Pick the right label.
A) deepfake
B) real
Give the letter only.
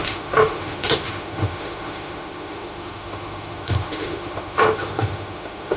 A